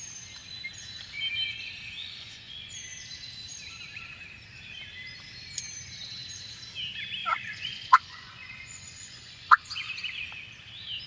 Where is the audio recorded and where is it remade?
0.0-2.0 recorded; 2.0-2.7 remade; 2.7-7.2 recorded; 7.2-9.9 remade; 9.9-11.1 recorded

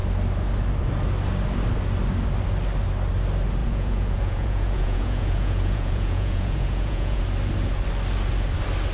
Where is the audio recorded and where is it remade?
0.0-3.6 recorded; 3.6-7.2 remade; 7.2-8.9 recorded

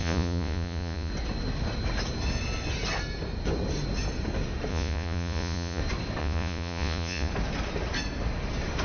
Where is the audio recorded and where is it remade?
0.0-1.1 remade; 1.1-4.7 recorded; 4.7-5.8 remade; 5.8-6.2 recorded; 6.2-7.3 remade; 7.3-8.8 recorded

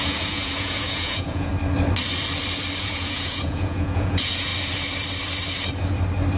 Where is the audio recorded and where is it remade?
0.0-1.5 remade; 1.5-2.8 recorded; 2.8-4.5 remade; 4.5-6.4 recorded